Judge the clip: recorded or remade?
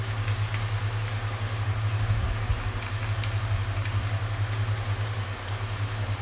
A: recorded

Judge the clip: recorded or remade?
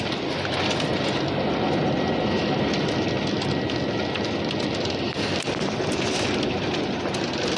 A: recorded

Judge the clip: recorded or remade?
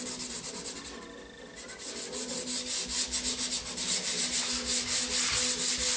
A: recorded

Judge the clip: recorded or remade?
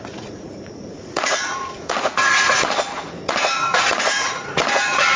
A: remade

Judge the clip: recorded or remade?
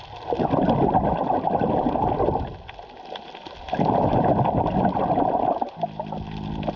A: recorded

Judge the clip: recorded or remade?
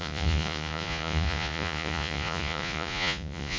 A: remade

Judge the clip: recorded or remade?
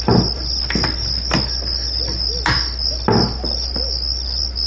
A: recorded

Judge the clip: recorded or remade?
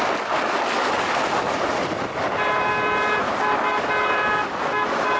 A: recorded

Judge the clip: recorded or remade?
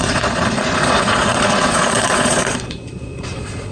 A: remade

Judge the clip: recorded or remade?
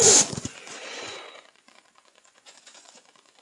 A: remade